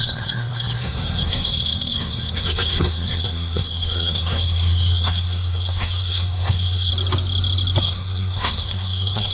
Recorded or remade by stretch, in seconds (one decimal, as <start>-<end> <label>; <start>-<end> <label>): 0.0-6.9 remade; 6.9-7.8 recorded; 7.8-9.3 remade

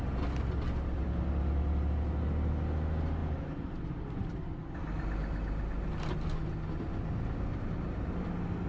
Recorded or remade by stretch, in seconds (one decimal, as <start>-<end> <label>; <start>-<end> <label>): 0.0-8.7 recorded

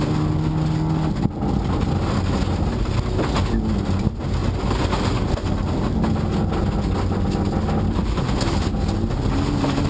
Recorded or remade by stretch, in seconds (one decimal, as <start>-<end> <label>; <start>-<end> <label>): 0.0-9.9 recorded

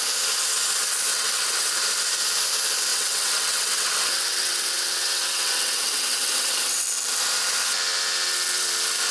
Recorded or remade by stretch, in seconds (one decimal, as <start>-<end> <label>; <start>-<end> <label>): 0.0-1.1 recorded; 1.1-1.7 remade; 1.7-2.9 recorded; 2.9-6.8 remade; 6.8-9.1 recorded

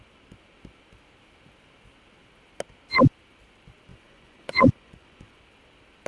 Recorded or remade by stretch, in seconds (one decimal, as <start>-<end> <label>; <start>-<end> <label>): 0.0-3.9 recorded; 3.9-5.4 remade; 5.4-6.1 recorded

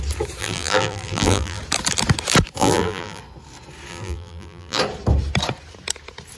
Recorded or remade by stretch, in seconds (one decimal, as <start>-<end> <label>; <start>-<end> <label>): 0.0-0.4 recorded; 0.4-1.6 remade; 1.6-2.6 recorded; 2.6-3.2 remade; 3.2-3.9 recorded; 3.9-4.8 remade; 4.8-6.4 recorded

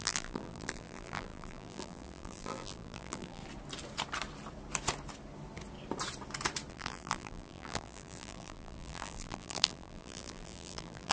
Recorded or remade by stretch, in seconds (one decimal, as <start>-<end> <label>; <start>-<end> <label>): 0.0-3.4 remade; 3.4-6.7 recorded; 6.7-11.1 remade